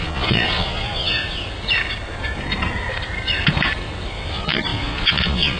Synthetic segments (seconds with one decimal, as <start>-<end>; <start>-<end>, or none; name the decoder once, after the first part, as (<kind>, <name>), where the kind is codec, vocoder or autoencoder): 0.0-1.2 (vocoder, Vocos); 4.3-5.6